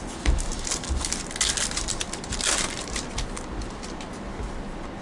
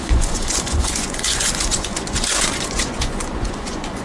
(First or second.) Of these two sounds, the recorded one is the first